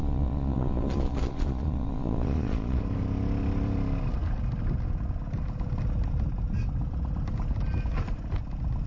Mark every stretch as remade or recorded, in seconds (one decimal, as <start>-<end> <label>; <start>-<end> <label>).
0.0-2.8 remade; 2.8-8.9 recorded